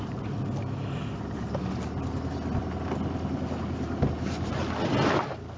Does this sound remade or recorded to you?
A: recorded